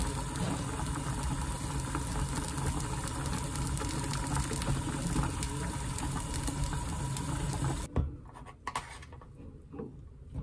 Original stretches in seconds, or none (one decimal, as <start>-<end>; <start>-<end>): 0.0-10.4